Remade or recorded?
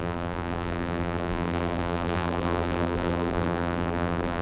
remade